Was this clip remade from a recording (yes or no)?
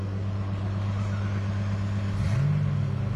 no